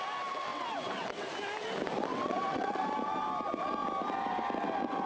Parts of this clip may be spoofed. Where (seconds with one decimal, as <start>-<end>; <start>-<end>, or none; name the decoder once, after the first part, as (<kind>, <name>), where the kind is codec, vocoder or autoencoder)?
0.5-1.3 (vocoder, WaveNeXt); 2.1-2.9

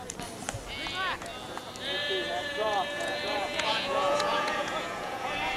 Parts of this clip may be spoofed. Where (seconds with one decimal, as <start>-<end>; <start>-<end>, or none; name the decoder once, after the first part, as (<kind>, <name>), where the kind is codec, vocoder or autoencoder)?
2.0-5.6 (vocoder, Vocos)

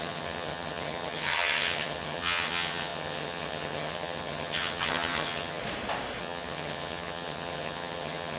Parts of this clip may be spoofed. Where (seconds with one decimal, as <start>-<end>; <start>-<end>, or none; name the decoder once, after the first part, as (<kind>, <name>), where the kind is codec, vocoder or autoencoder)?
0.0-5.6 (vocoder, HiFi-GAN); 6.2-8.4